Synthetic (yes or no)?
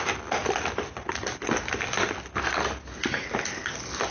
no